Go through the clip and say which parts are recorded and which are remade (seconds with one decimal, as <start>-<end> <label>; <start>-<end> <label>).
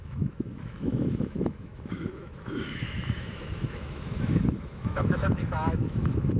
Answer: 0.0-6.4 remade